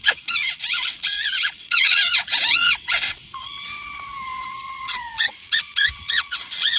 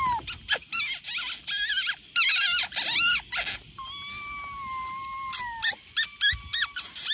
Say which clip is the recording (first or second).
second